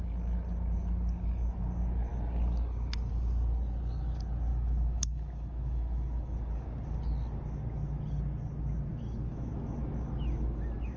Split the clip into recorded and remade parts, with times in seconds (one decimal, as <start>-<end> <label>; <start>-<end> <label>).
0.0-4.5 recorded; 4.5-6.5 remade; 6.5-8.9 recorded; 8.9-9.5 remade; 9.5-11.0 recorded